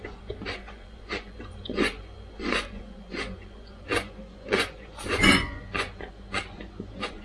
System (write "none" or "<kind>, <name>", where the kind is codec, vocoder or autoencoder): vocoder, Vocos